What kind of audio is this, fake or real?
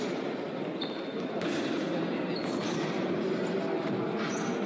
real